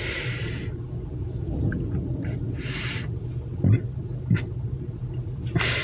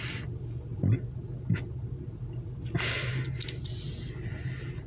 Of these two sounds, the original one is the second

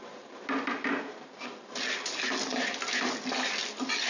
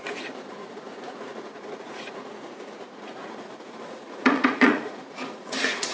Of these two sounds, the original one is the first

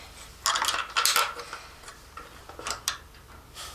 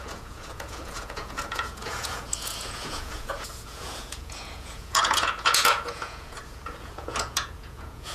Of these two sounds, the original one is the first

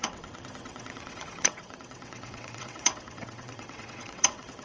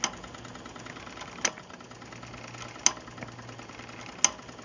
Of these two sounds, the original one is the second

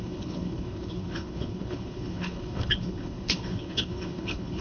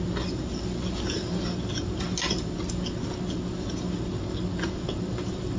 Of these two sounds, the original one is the second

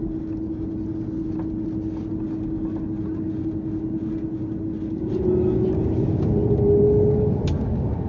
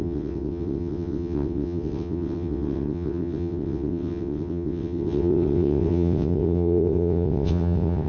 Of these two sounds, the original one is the first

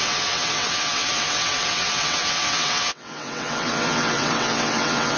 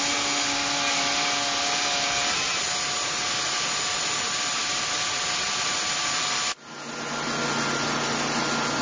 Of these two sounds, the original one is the second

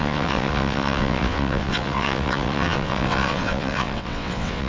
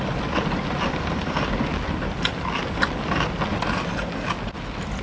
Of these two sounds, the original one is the second